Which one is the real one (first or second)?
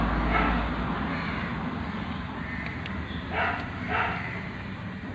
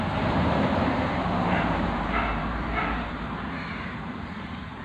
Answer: first